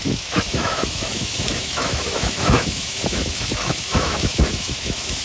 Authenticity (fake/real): fake